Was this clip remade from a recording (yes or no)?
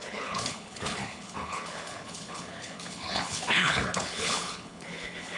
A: yes